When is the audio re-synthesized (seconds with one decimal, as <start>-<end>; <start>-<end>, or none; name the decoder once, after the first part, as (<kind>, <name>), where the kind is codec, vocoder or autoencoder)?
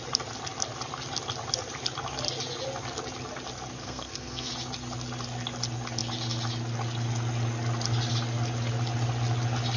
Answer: 3.8-4.5 (codec, SNAC)